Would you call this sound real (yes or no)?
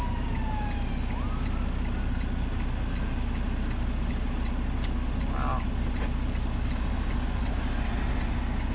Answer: yes